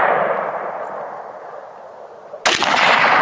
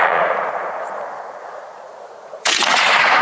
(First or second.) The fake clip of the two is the second